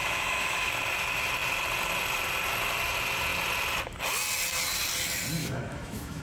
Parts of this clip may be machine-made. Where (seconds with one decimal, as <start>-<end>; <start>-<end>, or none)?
0.0-0.7; 5.4-6.2